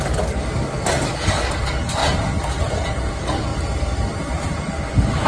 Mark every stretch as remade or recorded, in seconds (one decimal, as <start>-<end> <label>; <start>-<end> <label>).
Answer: 0.0-2.0 remade; 2.0-3.1 recorded; 3.1-3.5 remade; 3.5-4.7 recorded; 4.7-5.3 remade